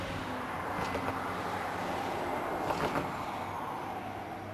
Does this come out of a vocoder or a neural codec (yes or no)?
no